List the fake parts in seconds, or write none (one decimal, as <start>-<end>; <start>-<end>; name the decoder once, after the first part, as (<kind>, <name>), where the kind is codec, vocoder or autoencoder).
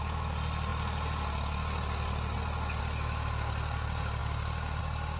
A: none